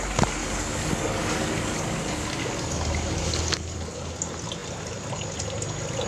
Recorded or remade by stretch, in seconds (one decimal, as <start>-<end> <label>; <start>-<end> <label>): 0.0-0.4 recorded; 0.4-4.1 remade; 4.1-6.1 recorded